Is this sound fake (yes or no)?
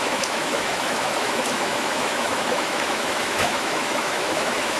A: yes